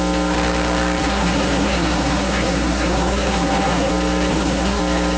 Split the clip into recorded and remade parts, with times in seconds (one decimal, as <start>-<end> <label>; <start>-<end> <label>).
0.0-1.0 recorded; 1.0-3.9 remade; 3.9-4.3 recorded; 4.3-4.8 remade; 4.8-5.2 recorded